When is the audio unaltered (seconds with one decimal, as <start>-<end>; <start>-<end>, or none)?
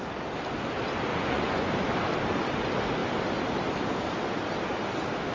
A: 0.0-1.1; 1.7-5.3